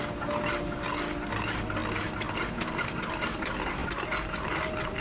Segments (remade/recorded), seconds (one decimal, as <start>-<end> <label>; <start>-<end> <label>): 0.0-1.8 remade; 1.8-2.5 recorded; 2.5-5.0 remade